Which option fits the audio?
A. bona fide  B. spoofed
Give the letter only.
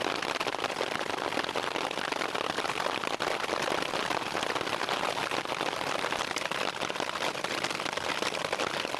A